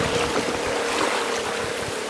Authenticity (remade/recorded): recorded